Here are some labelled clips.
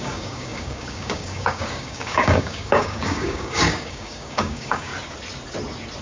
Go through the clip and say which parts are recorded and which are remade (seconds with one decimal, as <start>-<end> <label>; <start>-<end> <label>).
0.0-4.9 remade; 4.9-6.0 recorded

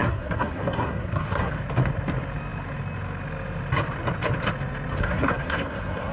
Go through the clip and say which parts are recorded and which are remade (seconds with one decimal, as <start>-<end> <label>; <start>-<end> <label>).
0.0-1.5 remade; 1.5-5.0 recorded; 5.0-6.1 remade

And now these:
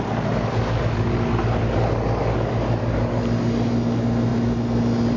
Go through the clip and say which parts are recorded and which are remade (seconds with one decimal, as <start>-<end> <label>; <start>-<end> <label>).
0.0-5.2 recorded

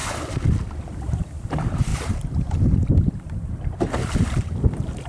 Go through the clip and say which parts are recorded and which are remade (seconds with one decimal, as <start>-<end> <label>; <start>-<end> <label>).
0.0-1.0 recorded; 1.0-5.1 remade

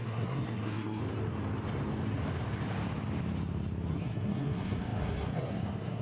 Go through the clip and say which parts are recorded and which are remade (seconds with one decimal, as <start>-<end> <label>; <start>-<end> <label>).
0.0-1.0 remade; 1.0-3.9 recorded; 3.9-6.0 remade

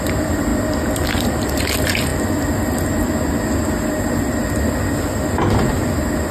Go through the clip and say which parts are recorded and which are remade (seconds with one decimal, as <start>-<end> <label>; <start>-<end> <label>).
0.0-2.1 remade; 2.1-5.0 recorded; 5.0-6.3 remade

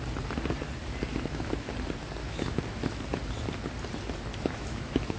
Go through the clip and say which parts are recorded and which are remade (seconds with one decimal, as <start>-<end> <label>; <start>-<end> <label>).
0.0-1.1 recorded; 1.1-1.7 remade; 1.7-2.2 recorded; 2.2-2.9 remade; 2.9-4.3 recorded; 4.3-5.2 remade